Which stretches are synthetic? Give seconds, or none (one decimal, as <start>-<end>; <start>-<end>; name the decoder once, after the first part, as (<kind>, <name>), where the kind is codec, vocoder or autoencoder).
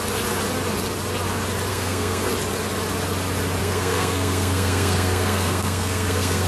1.7-2.3 (codec, SNAC); 3.6-6.5